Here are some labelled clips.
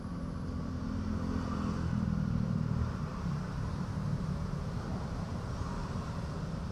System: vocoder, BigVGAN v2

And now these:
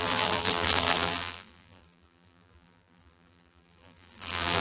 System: vocoder, BigVGAN v2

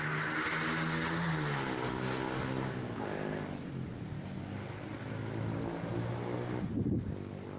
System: none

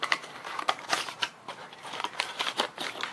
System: vocoder, BigVGAN v2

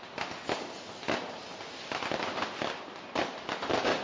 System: vocoder, BigVGAN v2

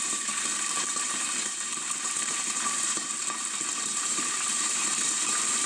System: vocoder, BigVGAN v2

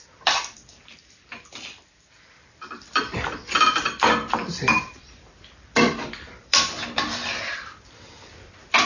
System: vocoder, BigVGAN v2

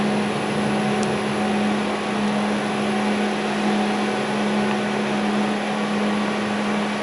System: none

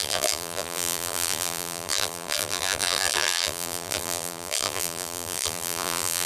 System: vocoder, BigVGAN v2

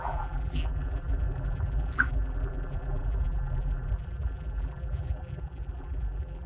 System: vocoder, BigVGAN v2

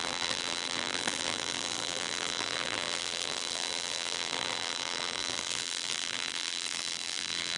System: vocoder, BigVGAN v2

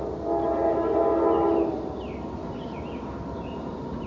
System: none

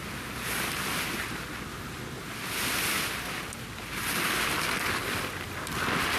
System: none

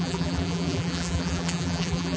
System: vocoder, BigVGAN v2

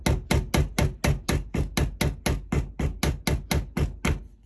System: none